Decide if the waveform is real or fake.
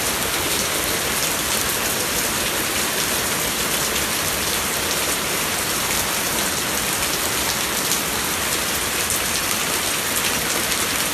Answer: fake